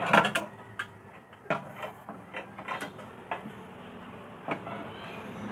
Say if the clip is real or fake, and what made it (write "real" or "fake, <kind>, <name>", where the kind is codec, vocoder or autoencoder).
real